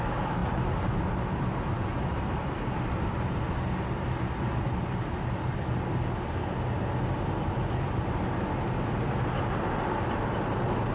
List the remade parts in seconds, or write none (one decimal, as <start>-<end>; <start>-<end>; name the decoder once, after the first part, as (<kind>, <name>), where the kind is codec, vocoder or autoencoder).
none